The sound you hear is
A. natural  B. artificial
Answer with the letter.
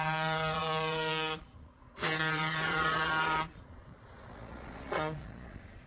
B